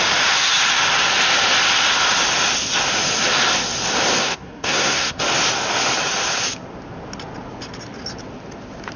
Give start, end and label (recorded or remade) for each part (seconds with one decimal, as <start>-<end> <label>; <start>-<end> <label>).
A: 0.0-4.2 recorded; 4.2-5.2 remade; 5.2-9.0 recorded